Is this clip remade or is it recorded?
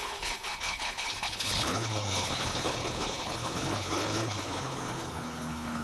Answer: remade